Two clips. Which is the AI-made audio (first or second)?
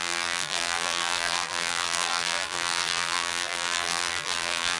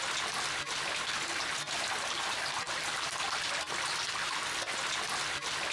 first